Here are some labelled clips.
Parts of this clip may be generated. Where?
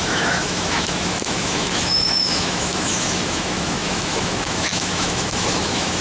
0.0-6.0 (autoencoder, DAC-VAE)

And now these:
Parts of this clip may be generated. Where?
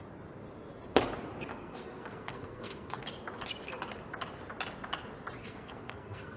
1.5-3.0 (codec, SNAC); 5.4-6.4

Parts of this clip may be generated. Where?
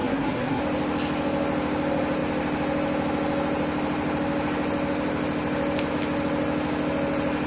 0.0-0.6 (codec, SNAC)